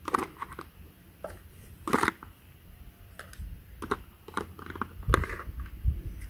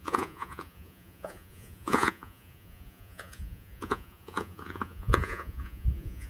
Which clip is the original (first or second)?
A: first